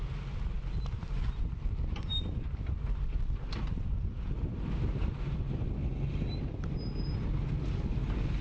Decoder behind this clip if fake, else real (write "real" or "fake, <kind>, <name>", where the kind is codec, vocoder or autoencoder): real